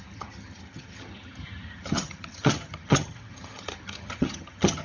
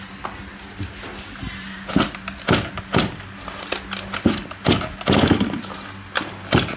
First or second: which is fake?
first